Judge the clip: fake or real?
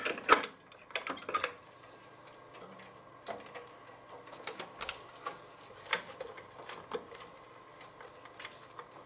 real